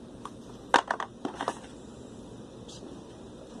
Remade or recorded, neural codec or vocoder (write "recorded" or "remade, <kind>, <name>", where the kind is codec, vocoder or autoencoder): recorded